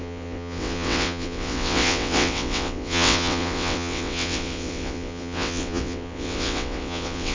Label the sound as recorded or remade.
remade